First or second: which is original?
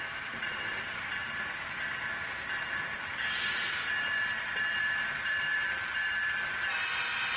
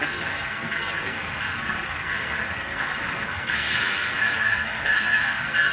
first